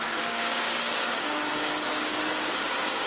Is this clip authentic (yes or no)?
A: no